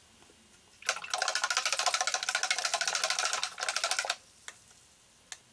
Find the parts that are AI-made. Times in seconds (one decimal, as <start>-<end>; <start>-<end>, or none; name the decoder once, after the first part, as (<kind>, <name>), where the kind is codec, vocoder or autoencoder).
none